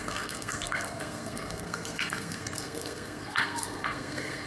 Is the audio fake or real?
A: fake